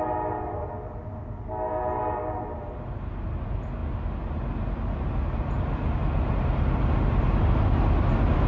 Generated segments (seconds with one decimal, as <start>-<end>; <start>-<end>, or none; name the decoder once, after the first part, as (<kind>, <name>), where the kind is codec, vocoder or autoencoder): none